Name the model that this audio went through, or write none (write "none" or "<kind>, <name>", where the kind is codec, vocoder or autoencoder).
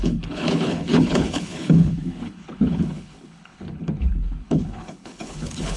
codec, HILCodec